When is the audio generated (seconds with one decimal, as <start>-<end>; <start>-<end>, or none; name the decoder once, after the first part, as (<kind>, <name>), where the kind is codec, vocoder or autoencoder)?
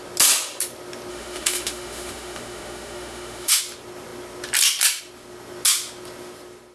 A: 1.1-3.6 (autoencoder, DAC-VAE)